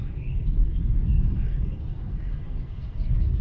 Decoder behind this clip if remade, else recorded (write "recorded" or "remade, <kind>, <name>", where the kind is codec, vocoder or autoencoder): remade, codec, SNAC